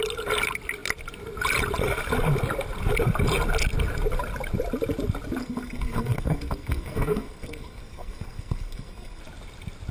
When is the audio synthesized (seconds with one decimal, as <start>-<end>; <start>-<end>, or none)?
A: 5.4-9.2